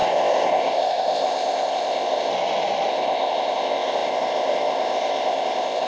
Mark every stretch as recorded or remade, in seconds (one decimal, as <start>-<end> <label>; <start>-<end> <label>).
0.0-2.3 remade; 2.3-2.9 recorded; 2.9-5.9 remade